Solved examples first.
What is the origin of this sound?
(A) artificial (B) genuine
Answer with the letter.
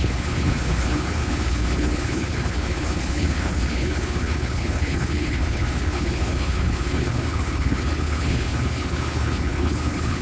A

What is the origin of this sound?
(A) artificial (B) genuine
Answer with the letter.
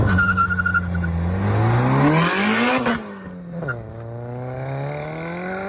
B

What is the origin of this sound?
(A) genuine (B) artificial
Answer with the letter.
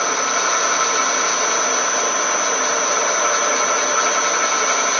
A